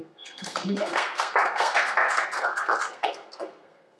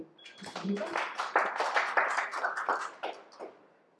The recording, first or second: second